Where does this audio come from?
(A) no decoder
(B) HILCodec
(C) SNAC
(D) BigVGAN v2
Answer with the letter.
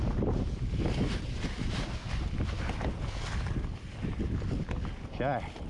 A